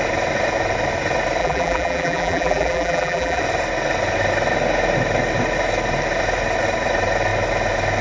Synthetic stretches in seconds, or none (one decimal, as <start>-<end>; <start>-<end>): 1.4-3.4